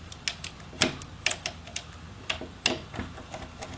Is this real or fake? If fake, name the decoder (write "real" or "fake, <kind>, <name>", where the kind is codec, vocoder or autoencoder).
real